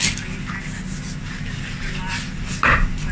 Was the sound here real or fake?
real